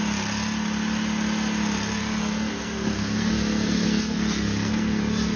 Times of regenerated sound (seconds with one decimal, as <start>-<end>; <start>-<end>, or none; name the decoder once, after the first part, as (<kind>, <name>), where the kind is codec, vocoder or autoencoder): 2.0-5.4 (codec, SNAC)

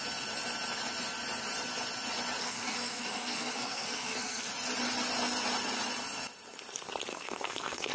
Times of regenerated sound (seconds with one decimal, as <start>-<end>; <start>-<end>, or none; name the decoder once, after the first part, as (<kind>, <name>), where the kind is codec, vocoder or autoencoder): 2.4-4.5 (codec, SNAC); 7.1-7.9

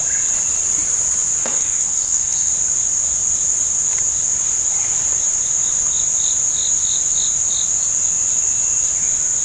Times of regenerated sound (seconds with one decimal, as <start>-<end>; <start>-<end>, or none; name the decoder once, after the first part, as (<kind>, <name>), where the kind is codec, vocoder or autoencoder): 1.4-2.5 (codec, SNAC)

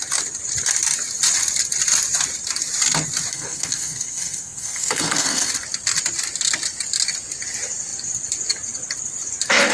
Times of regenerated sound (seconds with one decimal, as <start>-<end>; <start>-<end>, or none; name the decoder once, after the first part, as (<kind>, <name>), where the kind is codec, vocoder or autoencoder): 3.3-5.5 (codec, SNAC)

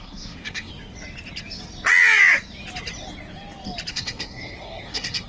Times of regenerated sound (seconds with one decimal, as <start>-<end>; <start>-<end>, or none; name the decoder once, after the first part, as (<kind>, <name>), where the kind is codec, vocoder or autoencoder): 0.0-0.7 (codec, SNAC); 3.9-5.3